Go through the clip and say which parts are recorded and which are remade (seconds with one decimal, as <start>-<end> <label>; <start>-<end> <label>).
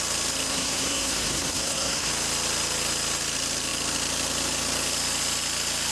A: 0.0-0.5 recorded; 0.5-2.1 remade; 2.1-5.9 recorded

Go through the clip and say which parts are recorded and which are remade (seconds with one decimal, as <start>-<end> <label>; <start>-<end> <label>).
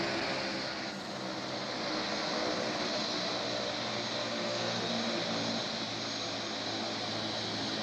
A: 0.0-4.2 recorded; 4.2-4.9 remade; 4.9-7.8 recorded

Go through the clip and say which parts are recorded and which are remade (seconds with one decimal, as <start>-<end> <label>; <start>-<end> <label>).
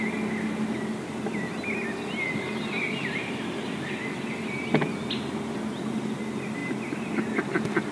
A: 0.0-7.9 recorded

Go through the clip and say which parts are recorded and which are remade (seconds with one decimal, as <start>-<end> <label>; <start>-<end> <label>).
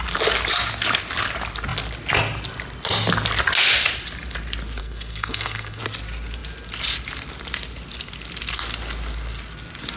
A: 0.0-4.8 recorded; 4.8-5.8 remade; 5.8-10.0 recorded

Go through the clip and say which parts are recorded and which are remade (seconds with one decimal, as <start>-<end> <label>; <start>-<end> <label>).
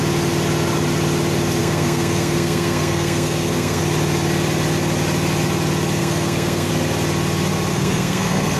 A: 0.0-1.6 recorded; 1.6-3.8 remade; 3.8-6.0 recorded; 6.0-6.7 remade; 6.7-7.7 recorded; 7.7-8.6 remade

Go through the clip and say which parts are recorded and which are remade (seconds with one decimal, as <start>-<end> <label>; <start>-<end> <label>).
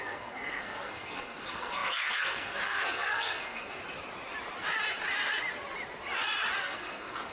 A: 0.0-3.8 remade; 3.8-6.6 recorded; 6.6-7.3 remade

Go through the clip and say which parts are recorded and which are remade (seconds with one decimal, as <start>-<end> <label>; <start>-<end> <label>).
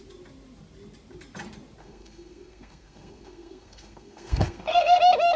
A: 0.0-1.8 recorded; 1.8-5.0 remade; 5.0-5.4 recorded